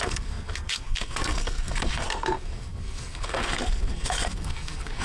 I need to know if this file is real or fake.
fake